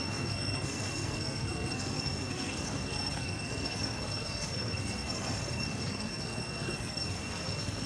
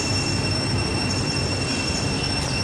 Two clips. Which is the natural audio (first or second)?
second